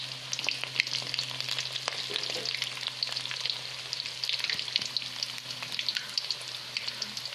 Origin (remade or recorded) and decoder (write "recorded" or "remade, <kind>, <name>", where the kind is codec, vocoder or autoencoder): recorded